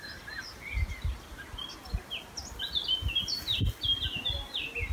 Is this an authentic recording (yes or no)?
yes